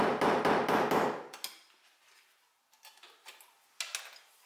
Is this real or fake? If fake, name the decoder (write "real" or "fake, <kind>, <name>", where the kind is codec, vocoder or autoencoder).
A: real